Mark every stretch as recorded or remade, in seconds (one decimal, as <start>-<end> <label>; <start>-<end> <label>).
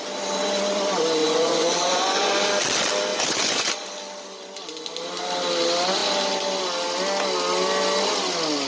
0.0-1.2 recorded; 1.2-2.3 remade; 2.3-3.1 recorded; 3.1-3.7 remade; 3.7-8.7 recorded